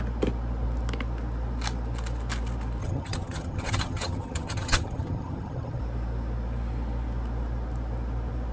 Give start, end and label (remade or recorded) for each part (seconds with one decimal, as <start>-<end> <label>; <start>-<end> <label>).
0.0-2.8 recorded; 2.8-5.8 remade; 5.8-8.5 recorded

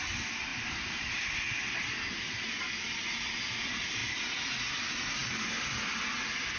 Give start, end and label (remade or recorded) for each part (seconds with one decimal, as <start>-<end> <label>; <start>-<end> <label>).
0.0-6.6 recorded

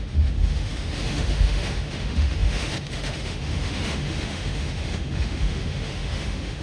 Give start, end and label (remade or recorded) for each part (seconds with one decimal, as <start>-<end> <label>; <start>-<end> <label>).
0.0-6.6 remade

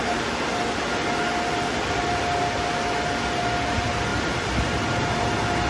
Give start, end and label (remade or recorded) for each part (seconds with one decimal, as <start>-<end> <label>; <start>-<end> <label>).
0.0-5.7 recorded

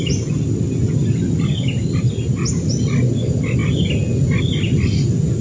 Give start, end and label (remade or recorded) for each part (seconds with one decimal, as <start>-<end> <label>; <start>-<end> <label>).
0.0-5.4 recorded

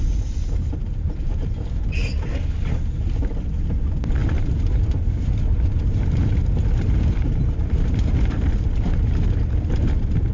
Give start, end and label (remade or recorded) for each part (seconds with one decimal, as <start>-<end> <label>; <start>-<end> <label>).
0.0-0.4 recorded; 0.4-1.9 remade; 1.9-4.2 recorded; 4.2-9.0 remade; 9.0-10.3 recorded

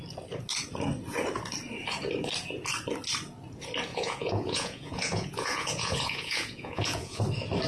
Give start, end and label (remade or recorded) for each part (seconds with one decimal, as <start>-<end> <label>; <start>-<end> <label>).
0.0-3.9 recorded; 3.9-7.2 remade; 7.2-7.7 recorded

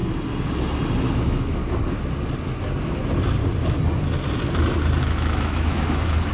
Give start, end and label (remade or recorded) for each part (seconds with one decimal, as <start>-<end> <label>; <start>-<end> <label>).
0.0-1.1 recorded; 1.1-1.6 remade; 1.6-5.0 recorded; 5.0-6.3 remade